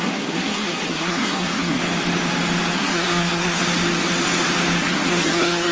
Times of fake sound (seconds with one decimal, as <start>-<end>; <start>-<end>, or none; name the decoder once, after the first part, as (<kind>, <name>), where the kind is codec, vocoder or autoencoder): 0.0-1.8 (codec, SNAC); 2.7-3.6; 4.8-5.7